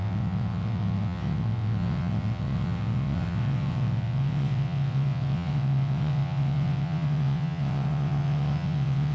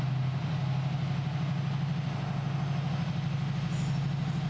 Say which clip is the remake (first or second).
first